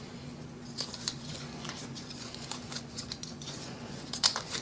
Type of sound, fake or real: fake